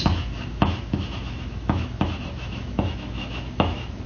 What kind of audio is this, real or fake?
fake